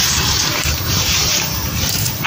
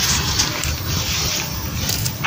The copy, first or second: first